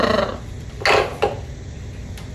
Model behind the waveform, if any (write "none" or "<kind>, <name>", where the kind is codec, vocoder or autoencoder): none